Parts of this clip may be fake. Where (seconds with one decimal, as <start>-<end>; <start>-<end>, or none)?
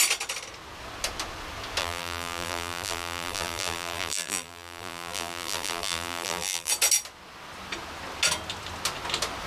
1.8-6.7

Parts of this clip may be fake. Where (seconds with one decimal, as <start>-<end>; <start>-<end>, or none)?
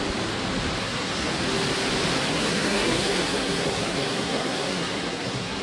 0.8-1.3; 2.3-5.6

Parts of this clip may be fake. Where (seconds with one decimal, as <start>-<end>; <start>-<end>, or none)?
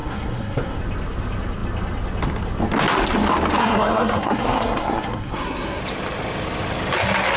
0.0-0.8; 3.6-5.8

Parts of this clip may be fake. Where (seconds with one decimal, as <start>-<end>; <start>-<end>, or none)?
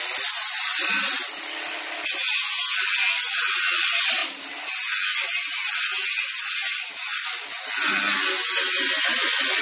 none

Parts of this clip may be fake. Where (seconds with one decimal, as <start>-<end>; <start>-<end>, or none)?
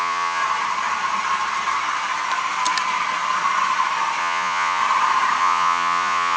0.0-0.4; 4.2-4.8; 5.4-6.4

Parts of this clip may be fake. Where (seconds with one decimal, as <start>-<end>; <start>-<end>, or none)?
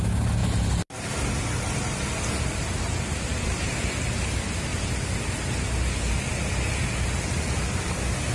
none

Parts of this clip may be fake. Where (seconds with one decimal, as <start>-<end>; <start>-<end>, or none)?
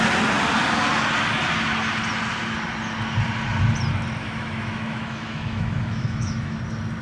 4.2-6.6